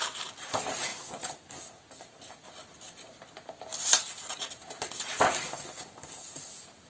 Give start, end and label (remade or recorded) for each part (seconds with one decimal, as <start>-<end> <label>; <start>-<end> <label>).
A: 0.0-6.9 recorded